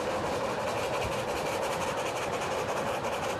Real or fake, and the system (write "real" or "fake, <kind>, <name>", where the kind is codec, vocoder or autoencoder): real